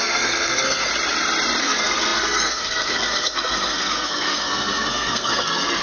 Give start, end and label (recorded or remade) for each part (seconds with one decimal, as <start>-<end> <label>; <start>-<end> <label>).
0.0-0.9 remade; 0.9-1.6 recorded; 1.6-5.8 remade